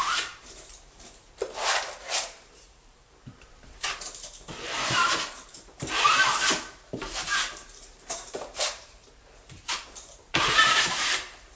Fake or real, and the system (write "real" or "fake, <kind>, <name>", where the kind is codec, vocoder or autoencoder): fake, vocoder, BigVGAN v2